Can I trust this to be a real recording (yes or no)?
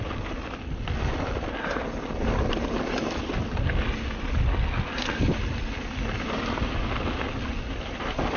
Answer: yes